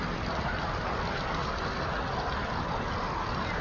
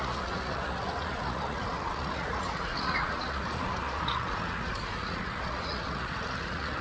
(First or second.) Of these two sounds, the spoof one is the second